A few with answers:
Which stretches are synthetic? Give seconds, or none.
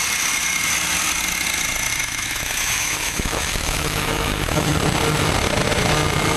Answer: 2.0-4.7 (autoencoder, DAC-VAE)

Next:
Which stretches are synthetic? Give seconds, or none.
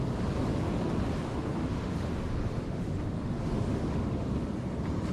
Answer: 1.3-4.4 (autoencoder, DAC-VAE)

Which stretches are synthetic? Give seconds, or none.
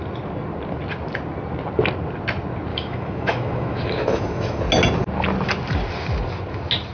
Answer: 2.7-4.6 (autoencoder, DAC-VAE)